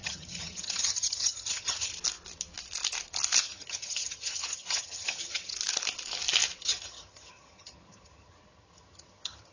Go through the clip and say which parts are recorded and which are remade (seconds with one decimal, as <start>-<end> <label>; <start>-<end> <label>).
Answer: 0.0-1.9 remade; 1.9-3.4 recorded; 3.4-5.5 remade; 5.5-6.6 recorded; 6.6-9.5 remade